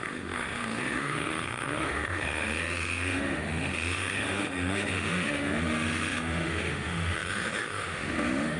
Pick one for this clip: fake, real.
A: fake